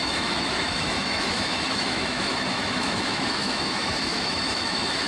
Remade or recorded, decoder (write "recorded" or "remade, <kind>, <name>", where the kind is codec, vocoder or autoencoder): remade, autoencoder, DAC-VAE